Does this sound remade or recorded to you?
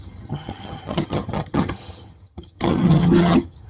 remade